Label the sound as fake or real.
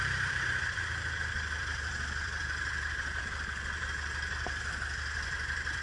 fake